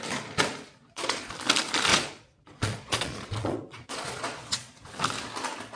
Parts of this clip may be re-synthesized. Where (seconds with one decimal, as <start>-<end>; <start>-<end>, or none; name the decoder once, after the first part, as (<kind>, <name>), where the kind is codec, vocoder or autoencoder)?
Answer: 0.8-1.3 (vocoder, Vocos); 1.9-4.9